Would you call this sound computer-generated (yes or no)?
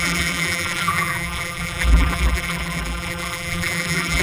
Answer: yes